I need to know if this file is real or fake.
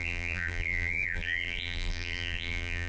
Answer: fake